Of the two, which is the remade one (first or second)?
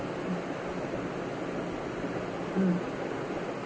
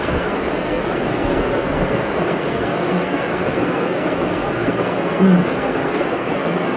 second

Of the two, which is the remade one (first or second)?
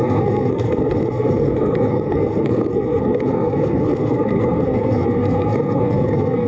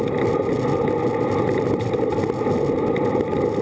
first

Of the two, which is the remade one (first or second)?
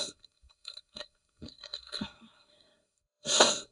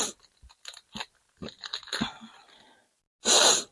first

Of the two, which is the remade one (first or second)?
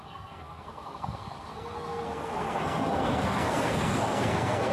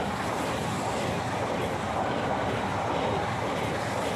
first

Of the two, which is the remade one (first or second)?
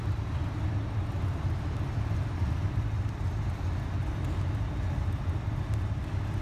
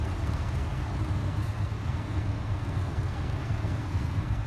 second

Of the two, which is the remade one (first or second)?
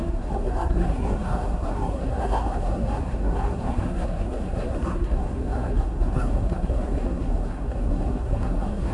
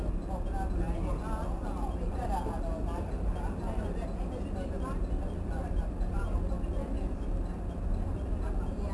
first